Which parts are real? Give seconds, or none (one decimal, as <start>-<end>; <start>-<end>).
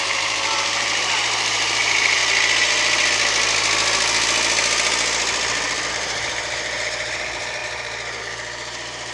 2.2-5.9